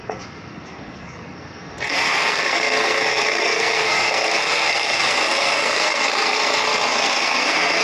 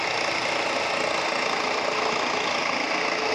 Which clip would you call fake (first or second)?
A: first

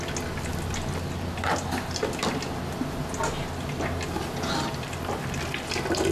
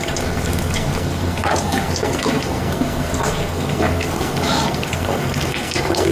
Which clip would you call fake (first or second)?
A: second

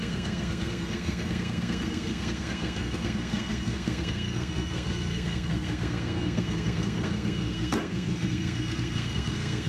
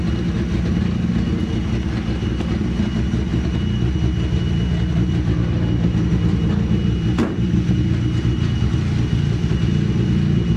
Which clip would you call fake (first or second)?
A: first